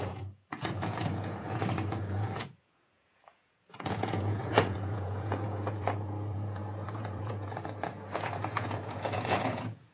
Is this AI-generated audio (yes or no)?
yes